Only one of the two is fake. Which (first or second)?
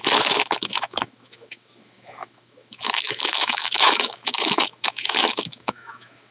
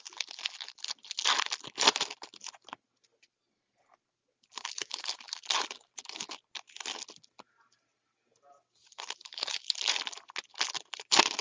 first